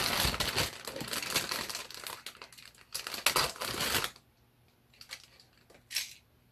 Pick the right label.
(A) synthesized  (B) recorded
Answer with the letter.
B